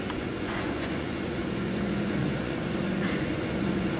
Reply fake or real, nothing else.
fake